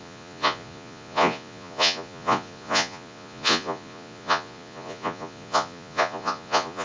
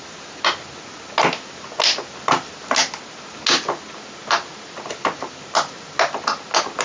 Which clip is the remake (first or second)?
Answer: first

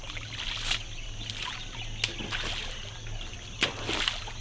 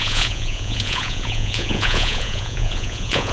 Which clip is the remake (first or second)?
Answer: second